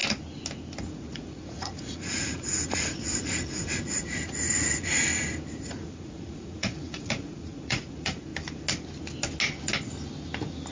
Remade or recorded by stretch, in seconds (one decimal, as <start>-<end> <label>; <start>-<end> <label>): 0.0-0.8 recorded; 0.8-5.1 remade; 5.1-5.6 recorded; 5.6-8.3 remade; 8.3-10.7 recorded